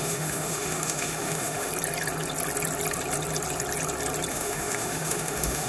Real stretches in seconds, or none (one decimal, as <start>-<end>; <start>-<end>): 1.7-4.3

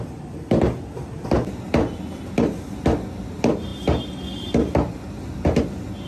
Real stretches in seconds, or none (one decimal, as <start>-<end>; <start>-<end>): 0.0-6.1